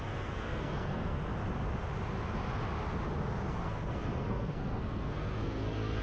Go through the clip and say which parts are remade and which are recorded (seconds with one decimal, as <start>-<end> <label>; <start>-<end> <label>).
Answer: 0.0-1.3 remade; 1.3-3.5 recorded; 3.5-6.0 remade

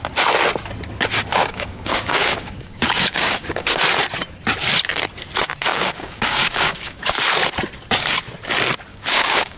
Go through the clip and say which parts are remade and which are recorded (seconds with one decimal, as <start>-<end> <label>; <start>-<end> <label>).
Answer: 0.0-1.4 recorded; 1.4-3.8 remade; 3.8-5.7 recorded; 5.7-7.1 remade; 7.1-8.9 recorded; 8.9-9.6 remade

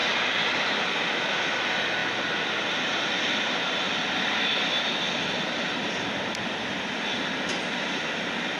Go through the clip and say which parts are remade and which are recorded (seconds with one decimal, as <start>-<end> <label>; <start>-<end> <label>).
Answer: 0.0-0.6 remade; 0.6-2.0 recorded; 2.0-7.2 remade; 7.2-8.6 recorded

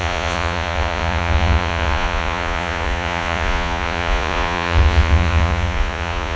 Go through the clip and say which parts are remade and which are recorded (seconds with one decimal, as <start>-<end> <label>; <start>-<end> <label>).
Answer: 0.0-6.4 remade